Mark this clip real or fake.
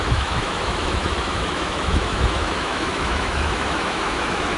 fake